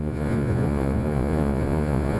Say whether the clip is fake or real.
fake